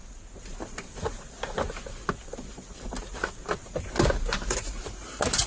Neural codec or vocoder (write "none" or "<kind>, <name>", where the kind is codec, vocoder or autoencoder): none